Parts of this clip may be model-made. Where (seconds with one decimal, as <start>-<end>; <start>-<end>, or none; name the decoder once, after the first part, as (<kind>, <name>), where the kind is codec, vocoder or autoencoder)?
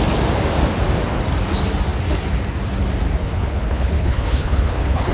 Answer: 3.2-5.1 (codec, HILCodec)